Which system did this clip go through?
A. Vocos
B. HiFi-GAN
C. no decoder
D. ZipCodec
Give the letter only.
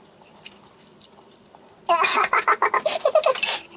C